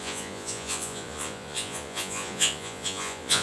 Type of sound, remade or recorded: remade